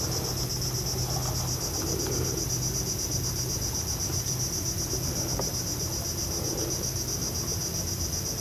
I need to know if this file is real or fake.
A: real